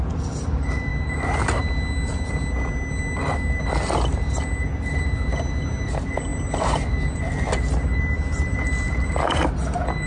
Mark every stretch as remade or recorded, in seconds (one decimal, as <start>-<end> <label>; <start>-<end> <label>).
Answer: 0.0-10.1 recorded